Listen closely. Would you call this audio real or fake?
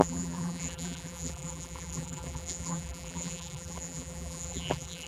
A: fake